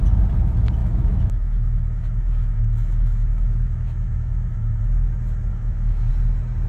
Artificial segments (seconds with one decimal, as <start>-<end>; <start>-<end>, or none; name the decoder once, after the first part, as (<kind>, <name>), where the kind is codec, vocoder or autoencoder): 0.8-4.8 (autoencoder, DAC-VAE); 5.5-6.1